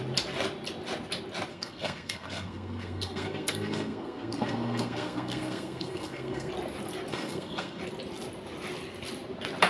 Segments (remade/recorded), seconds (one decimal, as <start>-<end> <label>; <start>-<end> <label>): 0.0-1.5 recorded; 1.5-6.5 remade; 6.5-7.1 recorded; 7.1-7.8 remade; 7.8-9.7 recorded